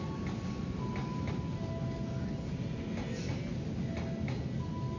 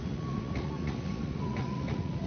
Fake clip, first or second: second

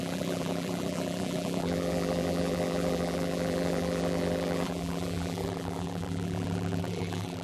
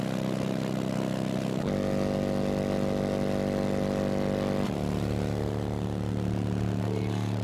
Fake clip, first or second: first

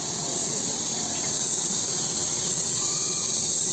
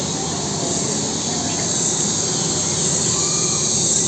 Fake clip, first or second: first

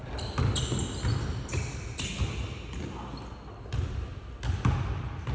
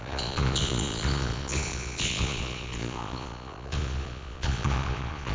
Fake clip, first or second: second